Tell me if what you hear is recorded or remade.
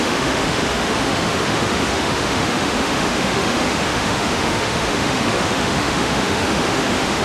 remade